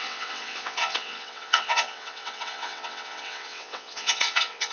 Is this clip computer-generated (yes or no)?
yes